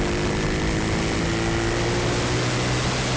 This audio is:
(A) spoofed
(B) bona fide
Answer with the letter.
B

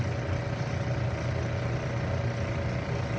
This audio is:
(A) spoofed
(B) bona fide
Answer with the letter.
B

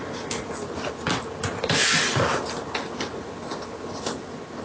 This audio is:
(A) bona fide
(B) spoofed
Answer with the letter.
A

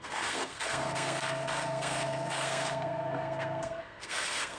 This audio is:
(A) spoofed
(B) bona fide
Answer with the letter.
A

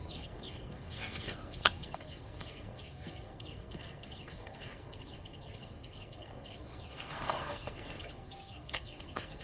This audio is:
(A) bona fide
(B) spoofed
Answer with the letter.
B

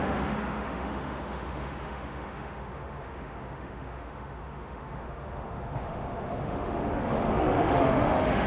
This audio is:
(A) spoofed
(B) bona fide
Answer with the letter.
A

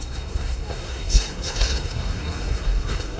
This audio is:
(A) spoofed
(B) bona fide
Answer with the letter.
A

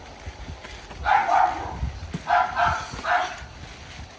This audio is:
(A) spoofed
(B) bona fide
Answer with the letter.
B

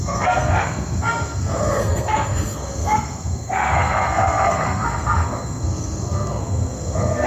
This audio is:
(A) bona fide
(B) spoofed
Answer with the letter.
B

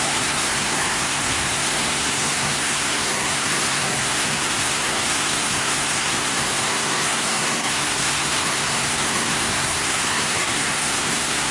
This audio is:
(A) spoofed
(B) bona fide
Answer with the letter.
A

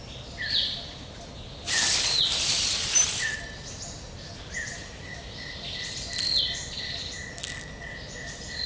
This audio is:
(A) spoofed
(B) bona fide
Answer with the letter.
B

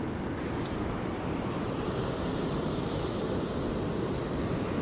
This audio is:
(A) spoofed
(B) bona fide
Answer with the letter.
B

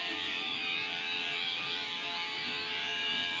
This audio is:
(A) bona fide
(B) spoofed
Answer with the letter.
B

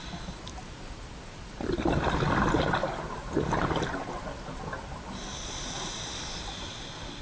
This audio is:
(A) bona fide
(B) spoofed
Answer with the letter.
A